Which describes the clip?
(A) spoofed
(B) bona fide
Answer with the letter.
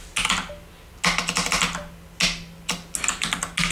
B